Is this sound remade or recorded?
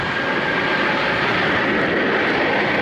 recorded